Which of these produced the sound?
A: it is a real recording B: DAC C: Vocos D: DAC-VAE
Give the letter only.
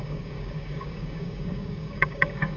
B